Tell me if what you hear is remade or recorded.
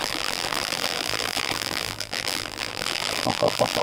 remade